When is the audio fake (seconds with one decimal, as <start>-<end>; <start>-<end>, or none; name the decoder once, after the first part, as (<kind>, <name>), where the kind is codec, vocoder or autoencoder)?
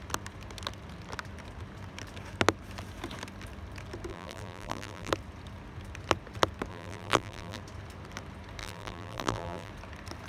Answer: 4.1-5.1 (vocoder, BigVGAN v2); 6.7-7.6; 8.6-9.7